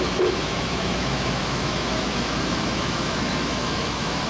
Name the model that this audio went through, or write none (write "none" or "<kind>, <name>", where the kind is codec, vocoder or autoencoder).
autoencoder, DAC-VAE